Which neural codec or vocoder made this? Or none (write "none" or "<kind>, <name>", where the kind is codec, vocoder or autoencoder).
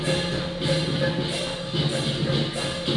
none